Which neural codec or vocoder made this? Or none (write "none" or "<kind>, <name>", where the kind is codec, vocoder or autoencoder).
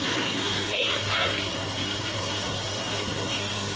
codec, SNAC